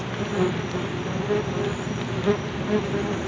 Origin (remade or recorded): recorded